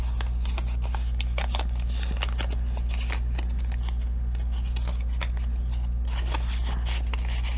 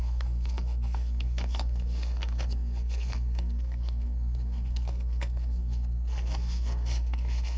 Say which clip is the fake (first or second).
second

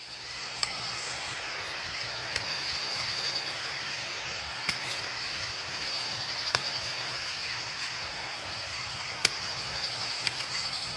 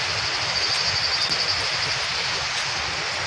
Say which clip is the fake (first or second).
first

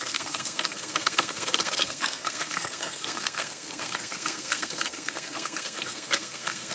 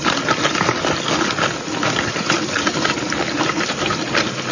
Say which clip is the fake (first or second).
first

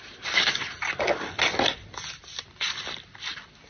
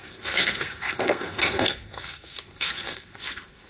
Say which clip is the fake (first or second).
second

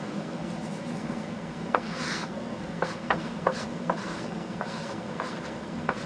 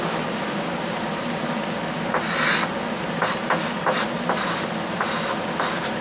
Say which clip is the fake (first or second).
first